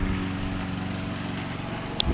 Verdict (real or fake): real